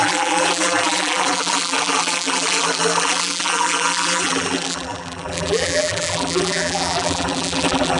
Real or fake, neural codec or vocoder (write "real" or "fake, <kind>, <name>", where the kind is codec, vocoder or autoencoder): fake, vocoder, BigVGAN v2